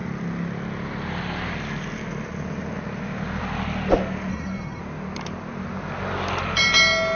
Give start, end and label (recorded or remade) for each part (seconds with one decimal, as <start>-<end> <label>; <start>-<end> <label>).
0.0-4.3 recorded; 4.3-4.8 remade; 4.8-7.2 recorded